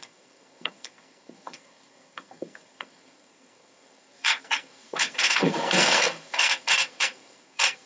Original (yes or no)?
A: no